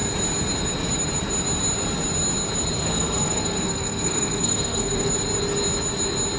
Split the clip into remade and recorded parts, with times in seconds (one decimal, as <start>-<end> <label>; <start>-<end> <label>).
0.0-2.8 recorded; 2.8-5.1 remade; 5.1-6.4 recorded